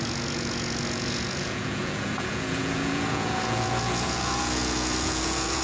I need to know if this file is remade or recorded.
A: remade